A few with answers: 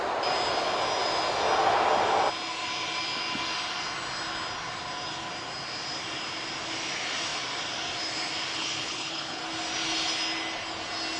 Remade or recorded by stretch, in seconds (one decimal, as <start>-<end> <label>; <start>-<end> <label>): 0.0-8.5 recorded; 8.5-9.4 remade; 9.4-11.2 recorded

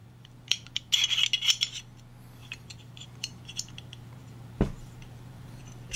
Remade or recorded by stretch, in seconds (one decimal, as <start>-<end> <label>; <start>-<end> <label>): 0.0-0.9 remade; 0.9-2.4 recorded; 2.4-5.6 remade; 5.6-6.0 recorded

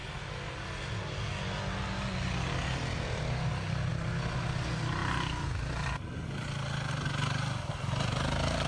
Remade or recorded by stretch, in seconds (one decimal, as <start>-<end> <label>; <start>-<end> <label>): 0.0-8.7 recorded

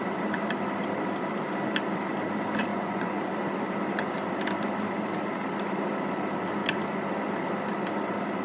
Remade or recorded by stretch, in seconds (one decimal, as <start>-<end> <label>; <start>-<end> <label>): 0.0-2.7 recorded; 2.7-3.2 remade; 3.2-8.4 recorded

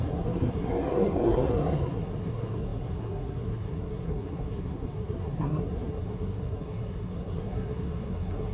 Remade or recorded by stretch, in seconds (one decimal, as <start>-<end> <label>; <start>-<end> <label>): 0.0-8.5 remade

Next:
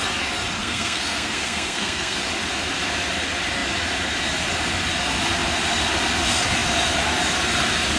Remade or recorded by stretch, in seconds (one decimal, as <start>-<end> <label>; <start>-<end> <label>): 0.0-0.6 recorded; 0.6-2.2 remade; 2.2-8.0 recorded

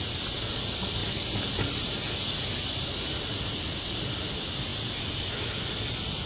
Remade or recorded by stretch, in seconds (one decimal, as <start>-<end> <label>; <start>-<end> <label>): 0.0-6.3 recorded

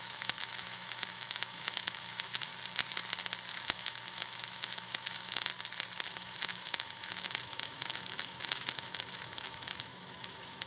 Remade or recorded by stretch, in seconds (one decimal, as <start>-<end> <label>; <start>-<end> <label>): 0.0-2.5 remade; 2.5-3.5 recorded; 3.5-5.5 remade; 5.5-6.1 recorded; 6.1-10.7 remade